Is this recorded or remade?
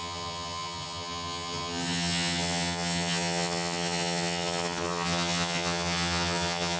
remade